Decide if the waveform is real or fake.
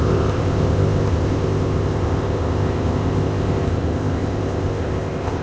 fake